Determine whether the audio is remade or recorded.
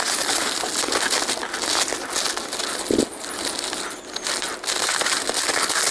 recorded